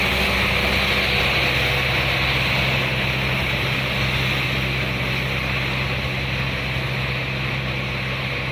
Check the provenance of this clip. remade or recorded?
recorded